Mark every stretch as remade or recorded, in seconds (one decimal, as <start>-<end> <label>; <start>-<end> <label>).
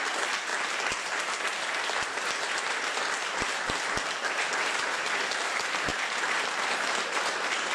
0.0-7.7 recorded